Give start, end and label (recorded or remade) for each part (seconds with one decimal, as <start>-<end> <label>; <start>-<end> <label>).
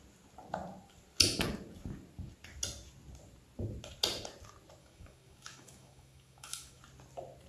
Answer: 0.0-4.8 recorded; 4.8-6.8 remade; 6.8-7.5 recorded